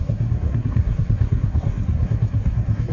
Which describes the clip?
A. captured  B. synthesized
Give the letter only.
B